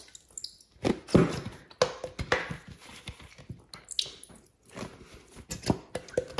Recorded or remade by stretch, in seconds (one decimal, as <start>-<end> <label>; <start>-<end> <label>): 0.0-6.4 recorded